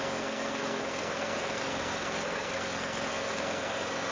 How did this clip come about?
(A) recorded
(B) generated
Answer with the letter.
B